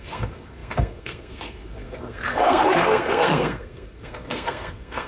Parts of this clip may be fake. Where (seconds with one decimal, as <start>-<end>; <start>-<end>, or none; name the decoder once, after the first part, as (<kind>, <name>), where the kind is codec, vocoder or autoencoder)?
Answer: 0.0-5.1 (codec, SNAC)